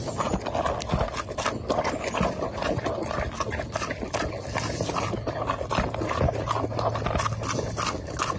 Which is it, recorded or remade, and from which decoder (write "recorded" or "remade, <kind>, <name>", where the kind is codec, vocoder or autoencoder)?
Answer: recorded